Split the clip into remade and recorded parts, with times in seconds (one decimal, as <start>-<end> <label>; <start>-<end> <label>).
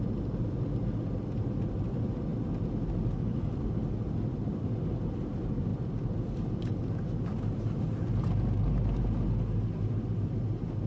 0.0-10.9 recorded